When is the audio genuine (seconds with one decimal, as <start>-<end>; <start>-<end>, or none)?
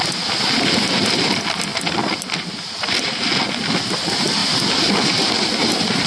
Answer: 0.0-6.1